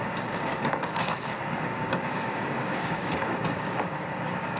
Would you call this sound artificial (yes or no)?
yes